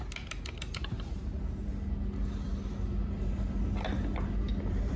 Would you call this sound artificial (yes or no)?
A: no